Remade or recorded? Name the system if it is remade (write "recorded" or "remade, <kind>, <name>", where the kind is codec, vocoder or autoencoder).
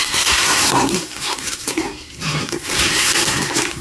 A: remade, codec, SNAC